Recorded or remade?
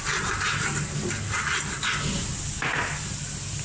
recorded